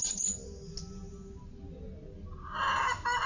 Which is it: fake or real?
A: real